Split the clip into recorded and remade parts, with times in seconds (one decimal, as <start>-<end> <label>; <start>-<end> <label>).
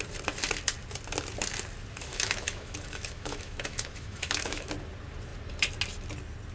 0.0-2.1 recorded; 2.1-4.7 remade; 4.7-6.5 recorded